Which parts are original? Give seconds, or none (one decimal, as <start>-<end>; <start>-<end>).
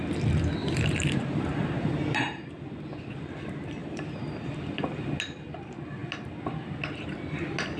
0.0-0.6; 3.0-3.8; 4.4-7.8